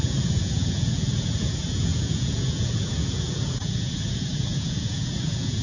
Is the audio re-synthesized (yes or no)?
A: yes